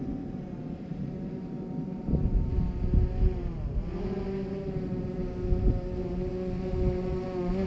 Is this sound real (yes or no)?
yes